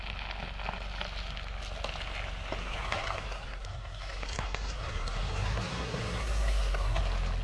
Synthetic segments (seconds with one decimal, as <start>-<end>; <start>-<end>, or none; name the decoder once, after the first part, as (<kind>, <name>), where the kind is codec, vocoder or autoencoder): 2.6-7.0 (codec, SNAC)